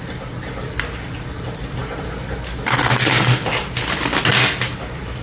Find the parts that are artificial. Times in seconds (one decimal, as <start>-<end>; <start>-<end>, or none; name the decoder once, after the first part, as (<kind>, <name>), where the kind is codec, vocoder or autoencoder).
none